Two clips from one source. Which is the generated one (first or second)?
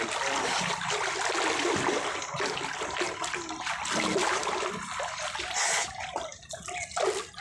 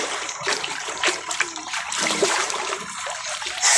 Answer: second